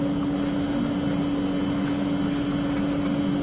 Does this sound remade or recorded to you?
recorded